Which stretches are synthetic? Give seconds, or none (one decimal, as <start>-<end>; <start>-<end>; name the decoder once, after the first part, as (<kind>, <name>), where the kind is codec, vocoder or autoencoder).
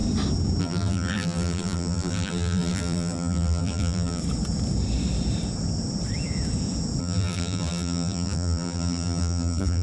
0.6-4.2 (vocoder, BigVGAN v2); 7.0-9.8